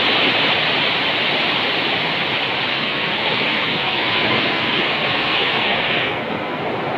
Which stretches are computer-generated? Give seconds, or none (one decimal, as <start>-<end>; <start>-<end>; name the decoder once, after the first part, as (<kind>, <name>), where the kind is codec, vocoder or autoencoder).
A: 2.7-6.6 (codec, SNAC)